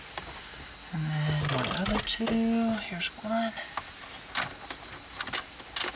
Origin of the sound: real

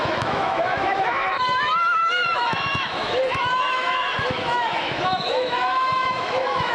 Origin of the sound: fake